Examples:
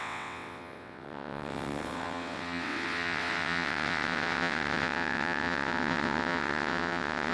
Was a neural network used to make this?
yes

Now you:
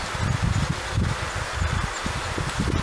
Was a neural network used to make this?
no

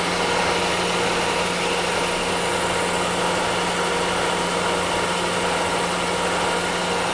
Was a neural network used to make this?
no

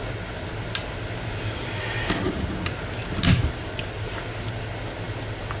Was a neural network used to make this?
no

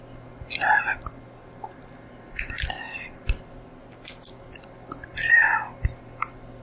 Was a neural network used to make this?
no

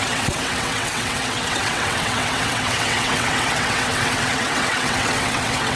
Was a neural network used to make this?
yes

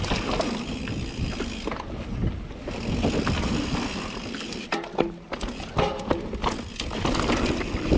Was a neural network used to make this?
no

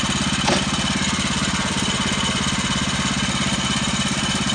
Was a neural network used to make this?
no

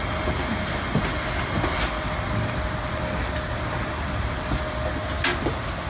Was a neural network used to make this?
no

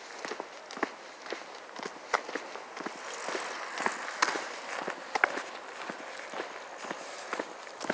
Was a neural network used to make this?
no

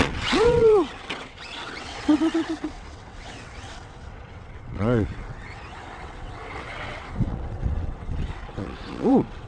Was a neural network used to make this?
yes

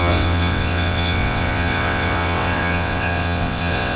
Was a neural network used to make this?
yes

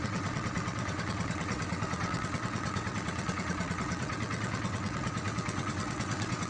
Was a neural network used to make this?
yes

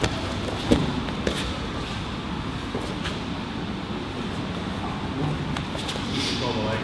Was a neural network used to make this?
no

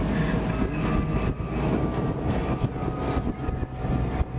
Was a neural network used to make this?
no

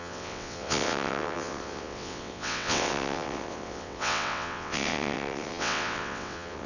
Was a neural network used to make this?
yes